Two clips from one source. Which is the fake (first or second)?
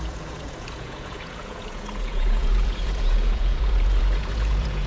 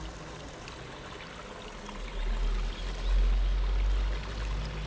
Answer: first